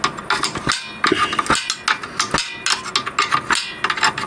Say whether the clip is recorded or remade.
recorded